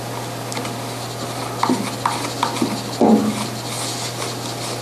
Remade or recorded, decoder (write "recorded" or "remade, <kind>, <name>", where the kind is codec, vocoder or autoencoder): recorded